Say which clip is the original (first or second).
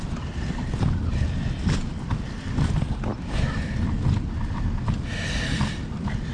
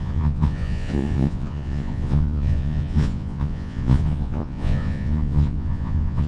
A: first